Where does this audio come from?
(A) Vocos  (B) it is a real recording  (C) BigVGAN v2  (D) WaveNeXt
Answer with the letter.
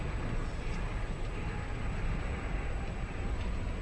B